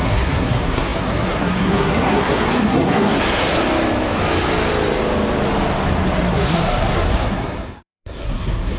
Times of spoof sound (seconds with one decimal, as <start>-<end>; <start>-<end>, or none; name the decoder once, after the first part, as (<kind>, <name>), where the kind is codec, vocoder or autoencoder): 0.0-3.6 (codec, SNAC); 6.3-8.8